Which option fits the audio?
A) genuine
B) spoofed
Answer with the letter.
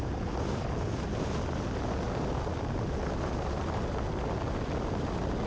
A